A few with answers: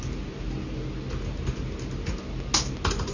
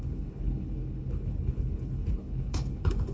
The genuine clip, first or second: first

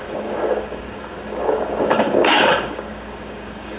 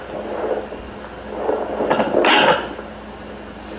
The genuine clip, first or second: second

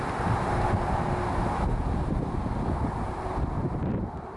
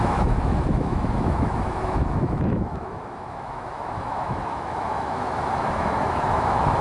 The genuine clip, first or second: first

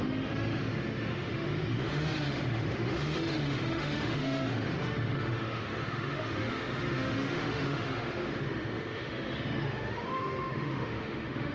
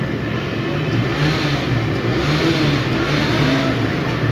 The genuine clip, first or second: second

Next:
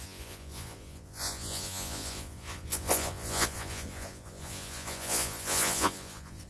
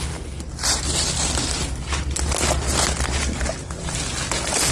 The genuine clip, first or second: second